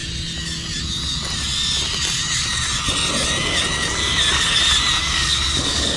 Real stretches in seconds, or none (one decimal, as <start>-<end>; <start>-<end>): 0.0-5.0